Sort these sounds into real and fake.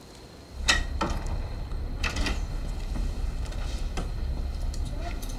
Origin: real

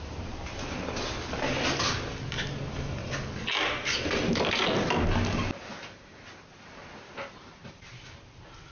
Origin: real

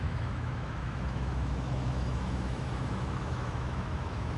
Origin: fake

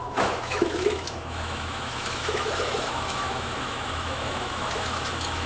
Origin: fake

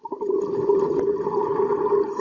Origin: real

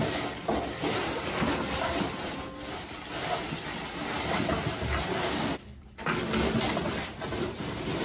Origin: real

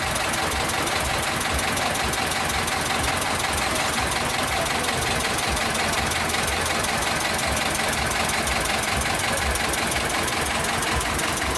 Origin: real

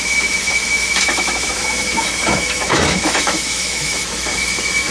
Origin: fake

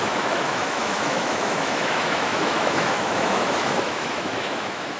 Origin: fake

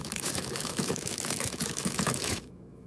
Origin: fake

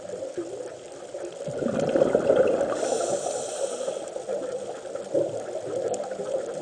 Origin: real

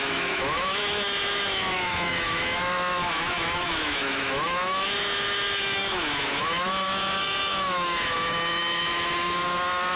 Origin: fake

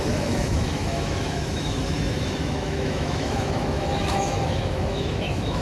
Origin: fake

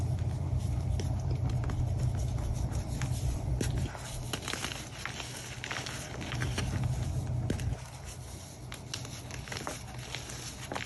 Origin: real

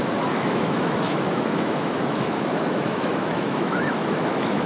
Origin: fake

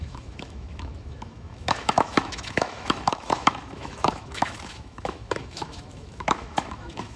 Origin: fake